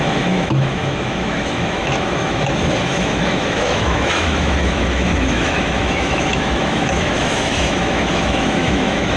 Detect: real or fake fake